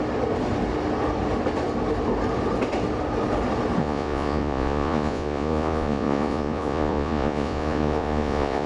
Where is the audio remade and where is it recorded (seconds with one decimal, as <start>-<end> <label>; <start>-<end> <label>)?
0.0-3.8 recorded; 3.8-8.7 remade